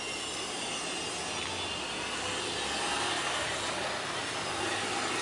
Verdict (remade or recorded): recorded